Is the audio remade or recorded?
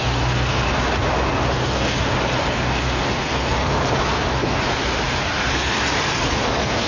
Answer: recorded